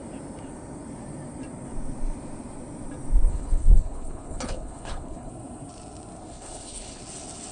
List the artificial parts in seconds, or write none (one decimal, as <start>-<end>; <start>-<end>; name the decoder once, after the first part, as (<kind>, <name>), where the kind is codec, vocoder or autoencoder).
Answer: 3.3-5.3 (codec, HILCodec); 6.2-7.0